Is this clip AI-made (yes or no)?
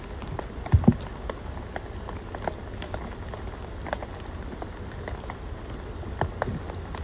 no